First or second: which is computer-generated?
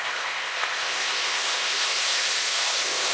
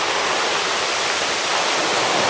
first